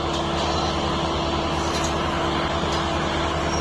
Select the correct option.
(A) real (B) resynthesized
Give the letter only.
A